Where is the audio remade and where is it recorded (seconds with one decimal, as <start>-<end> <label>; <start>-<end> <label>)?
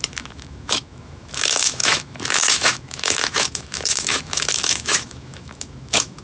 0.0-6.2 remade